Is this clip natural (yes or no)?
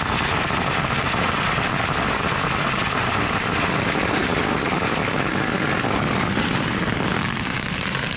yes